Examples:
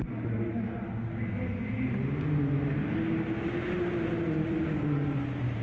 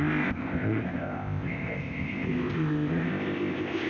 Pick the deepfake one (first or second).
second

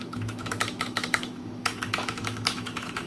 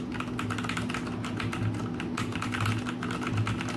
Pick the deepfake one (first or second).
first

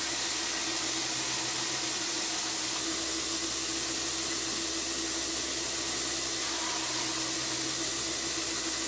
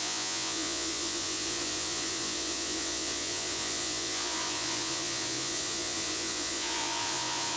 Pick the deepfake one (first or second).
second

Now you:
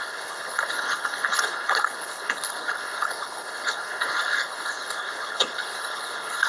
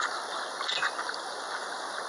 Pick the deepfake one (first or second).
first